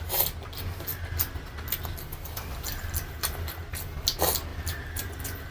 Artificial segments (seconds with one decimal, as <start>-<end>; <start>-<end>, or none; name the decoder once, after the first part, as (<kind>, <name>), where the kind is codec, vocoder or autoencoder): 4.5-5.5 (vocoder, BigVGAN v2)